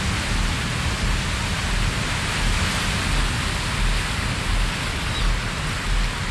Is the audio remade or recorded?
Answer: recorded